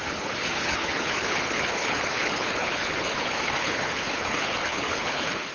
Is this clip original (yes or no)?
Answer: no